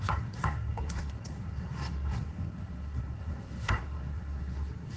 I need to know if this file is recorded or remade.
remade